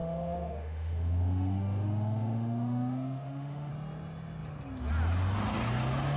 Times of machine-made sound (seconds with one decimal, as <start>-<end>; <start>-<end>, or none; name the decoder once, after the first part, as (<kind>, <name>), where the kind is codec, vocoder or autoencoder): 0.0-3.7 (autoencoder, DAC-VAE)